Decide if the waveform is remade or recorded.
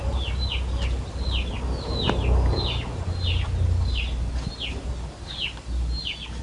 recorded